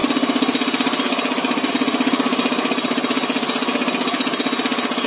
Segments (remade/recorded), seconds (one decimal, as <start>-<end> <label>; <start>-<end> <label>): 0.0-5.1 recorded